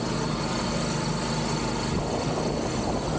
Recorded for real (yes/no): yes